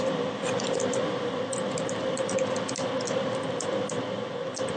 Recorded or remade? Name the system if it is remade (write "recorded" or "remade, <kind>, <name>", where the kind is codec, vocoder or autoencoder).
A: recorded